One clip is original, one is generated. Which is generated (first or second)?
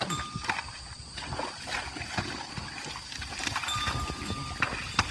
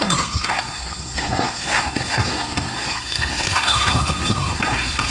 second